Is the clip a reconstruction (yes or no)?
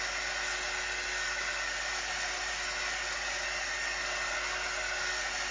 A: no